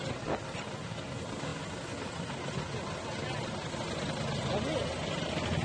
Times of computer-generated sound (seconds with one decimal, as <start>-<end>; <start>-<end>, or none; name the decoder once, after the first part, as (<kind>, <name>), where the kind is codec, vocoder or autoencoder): none